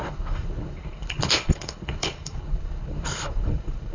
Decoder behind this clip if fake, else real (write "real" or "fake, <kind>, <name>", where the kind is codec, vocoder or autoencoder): fake, codec, HILCodec